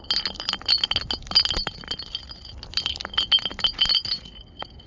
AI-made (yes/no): no